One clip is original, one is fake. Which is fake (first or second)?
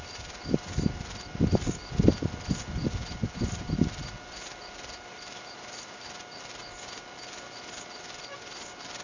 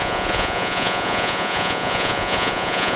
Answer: second